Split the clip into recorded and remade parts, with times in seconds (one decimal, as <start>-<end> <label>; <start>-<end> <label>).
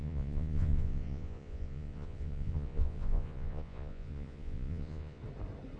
0.0-5.2 remade; 5.2-5.8 recorded